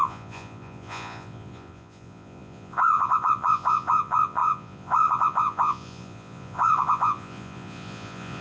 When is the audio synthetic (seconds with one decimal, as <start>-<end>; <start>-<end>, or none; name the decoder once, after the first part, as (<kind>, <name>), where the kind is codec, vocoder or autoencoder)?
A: 0.0-8.4 (vocoder, Vocos)